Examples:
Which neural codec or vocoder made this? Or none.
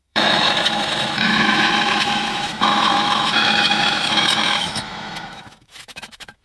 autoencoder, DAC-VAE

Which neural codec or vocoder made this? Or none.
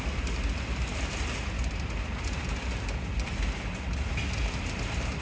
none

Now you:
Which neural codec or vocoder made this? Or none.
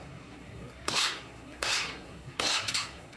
codec, SNAC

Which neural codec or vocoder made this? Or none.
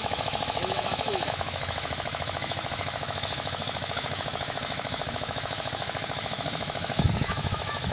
autoencoder, DAC-VAE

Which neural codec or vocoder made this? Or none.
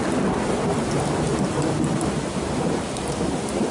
vocoder, BigVGAN v2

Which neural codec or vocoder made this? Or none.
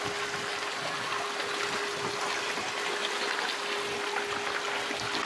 none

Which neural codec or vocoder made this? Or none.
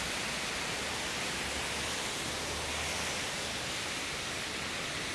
none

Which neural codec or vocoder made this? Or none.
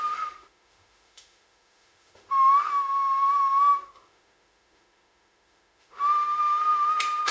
autoencoder, DAC-VAE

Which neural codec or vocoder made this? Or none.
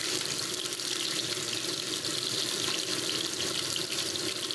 vocoder, BigVGAN v2